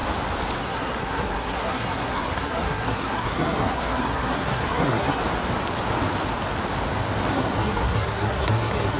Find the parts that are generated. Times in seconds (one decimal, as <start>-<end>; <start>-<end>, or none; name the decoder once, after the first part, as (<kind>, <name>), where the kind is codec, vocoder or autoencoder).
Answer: 0.6-5.2 (codec, SNAC); 7.3-9.0